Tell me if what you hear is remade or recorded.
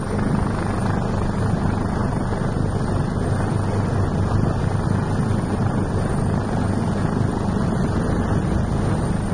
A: recorded